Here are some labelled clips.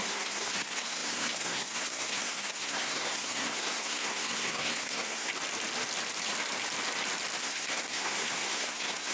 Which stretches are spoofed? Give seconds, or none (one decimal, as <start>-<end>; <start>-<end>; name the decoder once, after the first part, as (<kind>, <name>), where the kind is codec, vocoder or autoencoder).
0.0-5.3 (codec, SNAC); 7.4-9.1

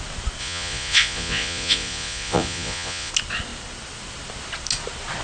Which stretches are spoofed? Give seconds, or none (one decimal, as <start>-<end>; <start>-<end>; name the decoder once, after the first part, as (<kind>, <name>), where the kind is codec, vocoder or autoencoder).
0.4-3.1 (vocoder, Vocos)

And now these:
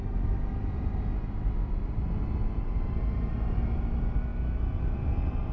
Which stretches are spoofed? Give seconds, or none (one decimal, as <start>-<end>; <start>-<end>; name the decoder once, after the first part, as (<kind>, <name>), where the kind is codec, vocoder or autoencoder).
none

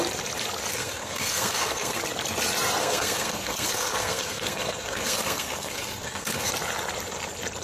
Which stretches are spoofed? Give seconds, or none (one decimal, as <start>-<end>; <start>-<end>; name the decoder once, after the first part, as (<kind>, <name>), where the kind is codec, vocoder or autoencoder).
0.7-2.0 (codec, SNAC); 2.8-6.5

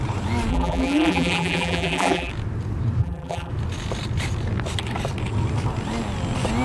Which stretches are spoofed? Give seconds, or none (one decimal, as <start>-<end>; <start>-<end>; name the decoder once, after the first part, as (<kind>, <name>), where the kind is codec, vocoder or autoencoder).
0.5-2.3 (vocoder, BigVGAN v2); 3.0-3.5